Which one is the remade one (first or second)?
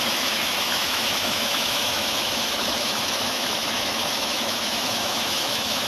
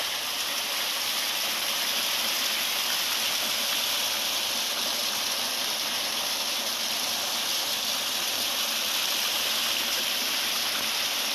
first